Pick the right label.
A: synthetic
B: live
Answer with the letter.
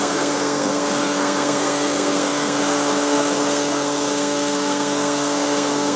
A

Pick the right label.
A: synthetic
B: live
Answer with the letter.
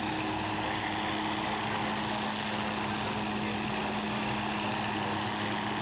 B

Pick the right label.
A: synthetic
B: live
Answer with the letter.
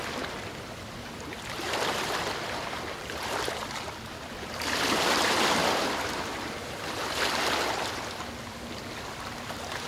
B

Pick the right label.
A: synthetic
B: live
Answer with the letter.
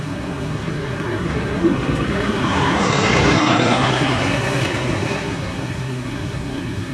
A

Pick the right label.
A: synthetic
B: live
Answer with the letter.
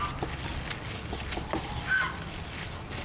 B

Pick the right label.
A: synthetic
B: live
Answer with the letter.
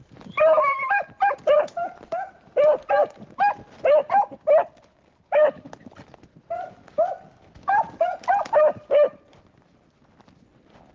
A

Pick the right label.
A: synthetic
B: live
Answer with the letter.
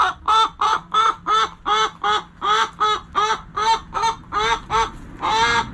B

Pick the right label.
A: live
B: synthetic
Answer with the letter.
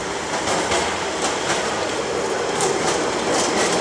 A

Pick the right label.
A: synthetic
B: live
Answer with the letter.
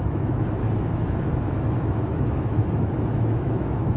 A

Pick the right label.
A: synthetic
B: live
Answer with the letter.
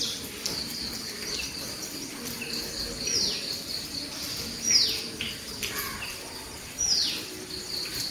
B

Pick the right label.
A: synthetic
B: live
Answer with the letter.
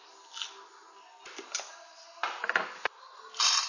B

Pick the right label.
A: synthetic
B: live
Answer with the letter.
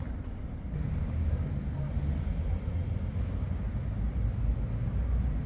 B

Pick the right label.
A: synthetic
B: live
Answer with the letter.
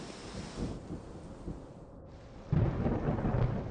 B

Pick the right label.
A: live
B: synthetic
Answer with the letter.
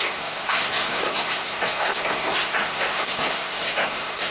B